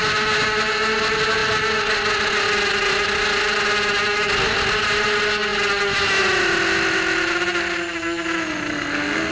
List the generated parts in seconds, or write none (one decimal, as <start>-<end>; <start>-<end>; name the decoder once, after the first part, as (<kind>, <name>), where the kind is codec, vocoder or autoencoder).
8.7-9.3 (codec, SNAC)